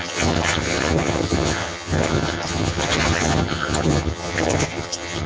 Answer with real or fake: fake